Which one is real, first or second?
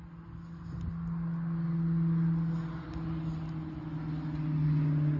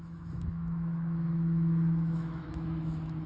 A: first